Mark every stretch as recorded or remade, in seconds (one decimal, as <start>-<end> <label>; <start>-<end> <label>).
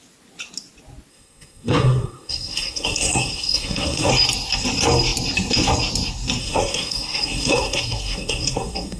0.0-1.1 recorded; 1.1-4.1 remade; 4.1-6.4 recorded; 6.4-9.0 remade